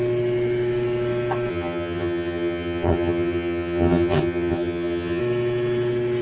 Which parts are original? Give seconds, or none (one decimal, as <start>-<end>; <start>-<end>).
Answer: 0.0-1.5; 5.2-6.2